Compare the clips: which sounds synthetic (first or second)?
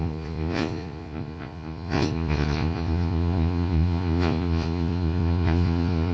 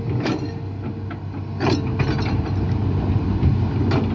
first